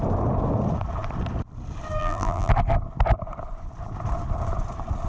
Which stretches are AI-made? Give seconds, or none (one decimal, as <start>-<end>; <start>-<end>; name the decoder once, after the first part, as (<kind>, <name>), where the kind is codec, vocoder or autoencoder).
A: 2.0-2.5 (vocoder, BigVGAN v2)